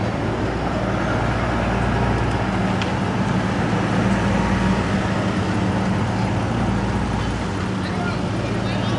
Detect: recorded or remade recorded